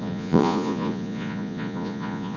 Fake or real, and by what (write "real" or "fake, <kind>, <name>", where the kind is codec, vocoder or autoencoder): fake, vocoder, Vocos